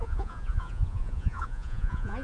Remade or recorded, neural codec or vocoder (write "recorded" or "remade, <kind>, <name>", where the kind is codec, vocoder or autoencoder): remade, vocoder, Vocos